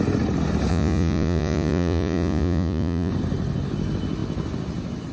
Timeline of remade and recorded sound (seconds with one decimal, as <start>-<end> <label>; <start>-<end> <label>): 0.0-0.7 recorded; 0.7-3.1 remade; 3.1-5.1 recorded